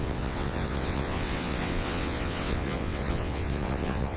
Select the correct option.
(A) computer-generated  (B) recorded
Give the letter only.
A